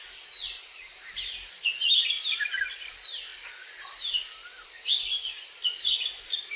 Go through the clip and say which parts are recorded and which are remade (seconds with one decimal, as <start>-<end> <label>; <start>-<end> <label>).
0.0-6.6 recorded